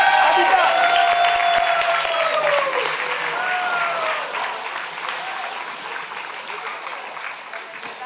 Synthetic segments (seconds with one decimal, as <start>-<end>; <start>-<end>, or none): none